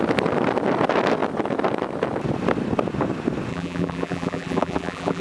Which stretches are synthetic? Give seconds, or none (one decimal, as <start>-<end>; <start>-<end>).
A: 3.5-5.2